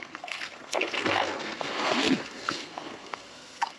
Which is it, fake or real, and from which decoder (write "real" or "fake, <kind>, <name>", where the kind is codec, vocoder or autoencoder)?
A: fake, codec, SNAC